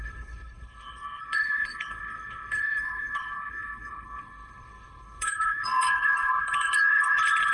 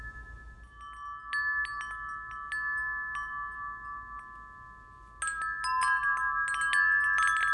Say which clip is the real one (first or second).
second